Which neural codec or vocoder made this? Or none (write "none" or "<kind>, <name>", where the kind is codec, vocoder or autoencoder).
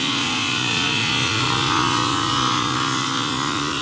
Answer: vocoder, Vocos